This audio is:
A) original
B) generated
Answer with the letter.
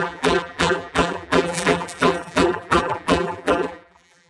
B